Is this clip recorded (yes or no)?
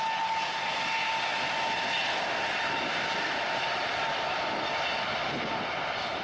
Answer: yes